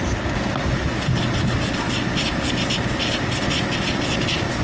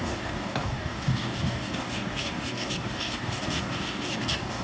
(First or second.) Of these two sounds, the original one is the first